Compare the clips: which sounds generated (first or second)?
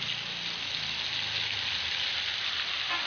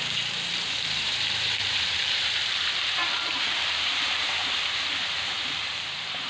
second